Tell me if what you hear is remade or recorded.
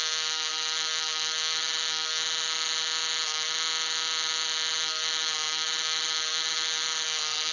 remade